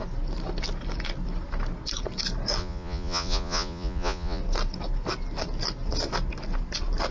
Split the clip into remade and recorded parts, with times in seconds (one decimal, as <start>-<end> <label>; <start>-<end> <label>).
0.0-2.6 recorded; 2.6-4.4 remade; 4.4-7.1 recorded

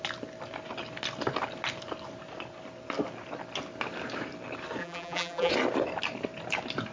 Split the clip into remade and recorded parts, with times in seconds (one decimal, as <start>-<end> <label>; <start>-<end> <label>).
0.0-4.8 recorded; 4.8-5.5 remade; 5.5-6.9 recorded

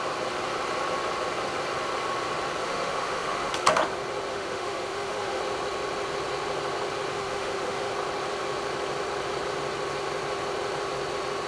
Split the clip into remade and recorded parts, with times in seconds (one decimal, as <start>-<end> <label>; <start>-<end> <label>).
0.0-2.6 recorded; 2.6-3.5 remade; 3.5-4.3 recorded; 4.3-5.4 remade; 5.4-7.1 recorded; 7.1-7.9 remade; 7.9-11.5 recorded

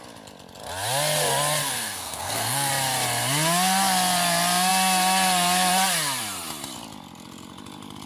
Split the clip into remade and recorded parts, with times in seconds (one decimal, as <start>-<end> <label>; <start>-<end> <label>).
0.0-1.6 recorded; 1.6-2.7 remade; 2.7-8.1 recorded

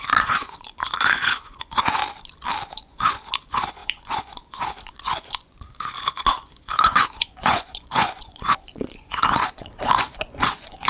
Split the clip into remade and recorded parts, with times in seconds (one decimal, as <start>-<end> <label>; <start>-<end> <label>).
0.0-2.0 remade; 2.0-2.7 recorded; 2.7-10.9 remade

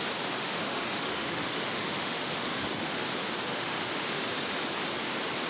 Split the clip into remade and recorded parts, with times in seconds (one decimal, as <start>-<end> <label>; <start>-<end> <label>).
0.0-0.4 recorded; 0.4-3.1 remade; 3.1-3.5 recorded; 3.5-4.4 remade; 4.4-5.5 recorded